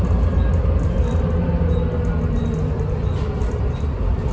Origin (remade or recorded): recorded